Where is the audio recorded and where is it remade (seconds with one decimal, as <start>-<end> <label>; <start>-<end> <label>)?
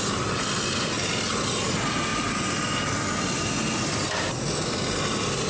0.0-5.5 recorded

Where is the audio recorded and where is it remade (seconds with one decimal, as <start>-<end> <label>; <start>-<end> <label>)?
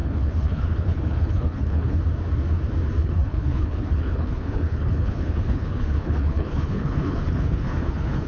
0.0-2.0 remade; 2.0-3.0 recorded; 3.0-8.3 remade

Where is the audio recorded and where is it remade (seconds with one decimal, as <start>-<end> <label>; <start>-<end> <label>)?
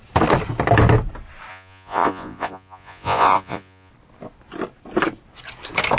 0.0-1.5 recorded; 1.5-3.9 remade; 3.9-6.0 recorded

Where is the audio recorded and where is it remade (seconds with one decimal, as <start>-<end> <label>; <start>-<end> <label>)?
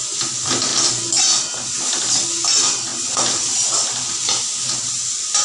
0.0-5.4 recorded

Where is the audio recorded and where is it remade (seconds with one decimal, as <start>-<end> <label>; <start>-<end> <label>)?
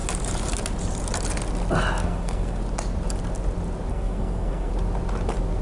0.0-2.0 recorded; 2.0-2.6 remade; 2.6-3.9 recorded; 3.9-4.7 remade; 4.7-5.6 recorded